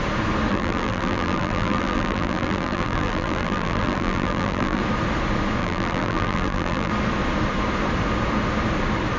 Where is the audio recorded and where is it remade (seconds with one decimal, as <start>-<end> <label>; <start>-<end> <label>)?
0.0-0.5 recorded; 0.5-4.8 remade; 4.8-5.6 recorded; 5.6-6.9 remade; 6.9-9.2 recorded